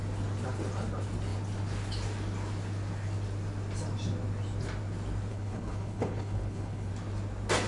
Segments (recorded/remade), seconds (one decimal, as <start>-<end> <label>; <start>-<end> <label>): 0.0-5.3 recorded; 5.3-6.9 remade; 6.9-7.7 recorded